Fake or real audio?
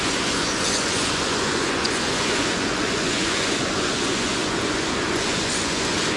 fake